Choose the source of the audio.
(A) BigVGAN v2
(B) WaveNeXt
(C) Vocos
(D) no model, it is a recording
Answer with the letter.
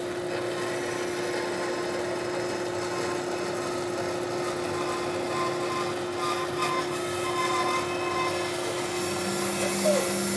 D